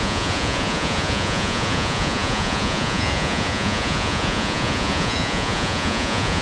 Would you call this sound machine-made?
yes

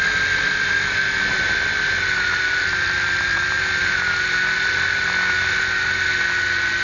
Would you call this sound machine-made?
no